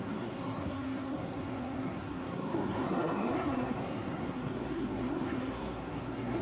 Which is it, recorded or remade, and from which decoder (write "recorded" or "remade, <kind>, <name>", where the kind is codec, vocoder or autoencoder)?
remade, codec, SNAC